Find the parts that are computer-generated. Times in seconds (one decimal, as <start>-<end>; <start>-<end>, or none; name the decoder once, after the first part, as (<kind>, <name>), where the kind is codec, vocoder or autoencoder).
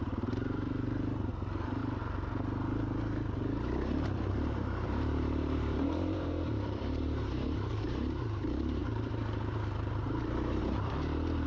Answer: 0.0-1.8 (vocoder, BigVGAN v2); 4.3-11.5